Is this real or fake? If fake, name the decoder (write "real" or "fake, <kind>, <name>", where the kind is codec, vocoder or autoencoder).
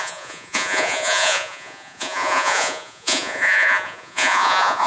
fake, vocoder, Vocos